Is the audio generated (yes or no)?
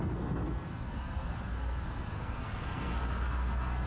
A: yes